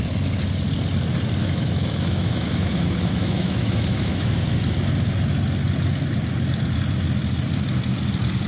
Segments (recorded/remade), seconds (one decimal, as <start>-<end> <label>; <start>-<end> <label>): 0.0-1.4 recorded; 1.4-4.4 remade; 4.4-8.5 recorded